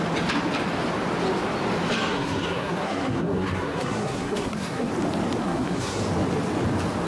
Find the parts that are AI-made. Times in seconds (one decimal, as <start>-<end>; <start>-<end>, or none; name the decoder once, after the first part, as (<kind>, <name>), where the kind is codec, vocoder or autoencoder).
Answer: 2.1-4.9 (codec, SNAC); 5.4-6.0

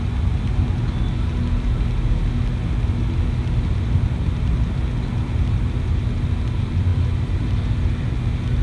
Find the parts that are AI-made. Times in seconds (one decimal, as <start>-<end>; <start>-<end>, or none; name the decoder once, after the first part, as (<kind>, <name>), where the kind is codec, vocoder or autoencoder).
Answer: none